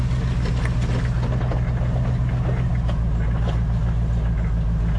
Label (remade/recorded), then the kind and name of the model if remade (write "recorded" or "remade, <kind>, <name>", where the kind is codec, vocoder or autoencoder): recorded